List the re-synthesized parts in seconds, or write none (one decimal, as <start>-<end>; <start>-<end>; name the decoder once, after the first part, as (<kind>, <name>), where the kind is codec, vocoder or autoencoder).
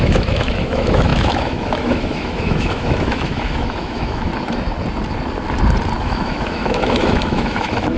0.0-4.3 (autoencoder, DAC-VAE); 6.0-8.0